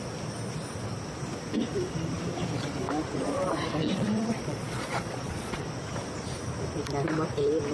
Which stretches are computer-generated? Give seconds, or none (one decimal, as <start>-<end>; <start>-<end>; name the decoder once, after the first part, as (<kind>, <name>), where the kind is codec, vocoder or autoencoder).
3.8-5.6 (vocoder, Vocos)